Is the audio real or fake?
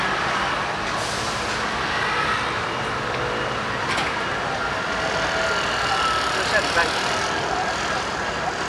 real